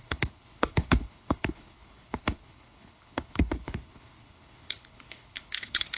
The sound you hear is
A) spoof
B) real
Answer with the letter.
A